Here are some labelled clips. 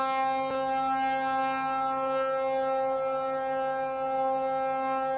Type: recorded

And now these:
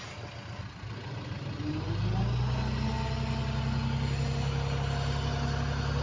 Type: recorded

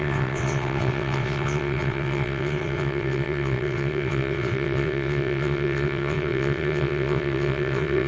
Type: remade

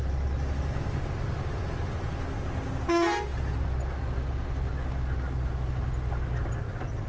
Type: recorded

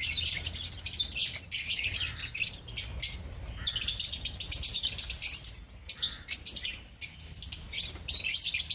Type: recorded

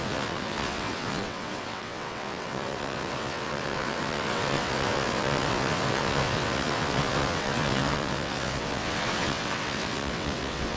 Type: remade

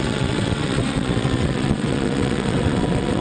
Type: remade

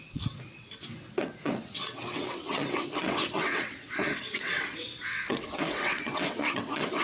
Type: remade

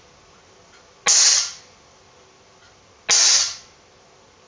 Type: recorded